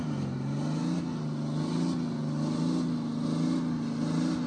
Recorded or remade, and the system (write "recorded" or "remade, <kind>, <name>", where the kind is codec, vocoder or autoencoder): recorded